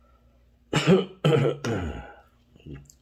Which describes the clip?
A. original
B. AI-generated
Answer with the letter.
A